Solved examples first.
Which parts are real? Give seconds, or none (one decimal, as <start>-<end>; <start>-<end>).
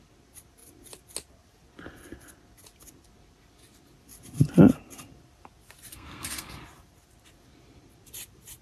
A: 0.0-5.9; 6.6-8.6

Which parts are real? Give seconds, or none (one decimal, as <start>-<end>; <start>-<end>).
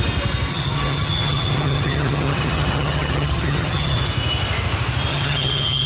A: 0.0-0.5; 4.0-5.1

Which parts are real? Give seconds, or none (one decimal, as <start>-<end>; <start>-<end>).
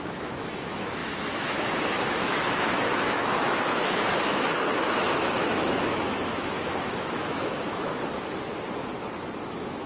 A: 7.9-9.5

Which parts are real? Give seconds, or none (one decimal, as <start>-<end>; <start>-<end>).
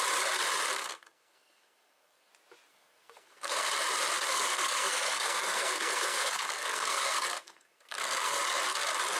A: 0.0-0.8; 2.3-2.7; 3.7-4.3; 8.4-9.2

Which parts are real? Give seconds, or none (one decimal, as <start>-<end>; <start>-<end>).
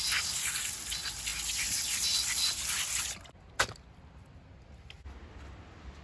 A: 0.0-6.0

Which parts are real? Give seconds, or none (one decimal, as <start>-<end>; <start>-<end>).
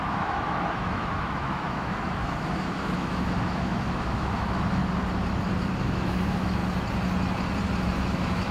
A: 4.8-5.8; 6.6-7.8